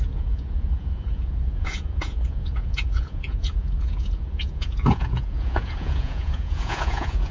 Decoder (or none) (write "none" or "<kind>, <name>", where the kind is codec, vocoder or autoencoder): vocoder, Vocos